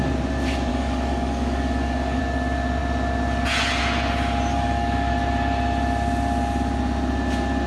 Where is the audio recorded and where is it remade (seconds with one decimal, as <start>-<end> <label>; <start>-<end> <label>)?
0.0-0.7 recorded; 0.7-2.2 remade; 2.2-4.5 recorded; 4.5-5.1 remade; 5.1-7.7 recorded